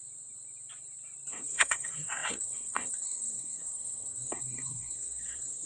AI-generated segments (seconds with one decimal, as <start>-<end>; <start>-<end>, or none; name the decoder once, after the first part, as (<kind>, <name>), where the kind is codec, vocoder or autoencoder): 1.3-5.7 (codec, SNAC)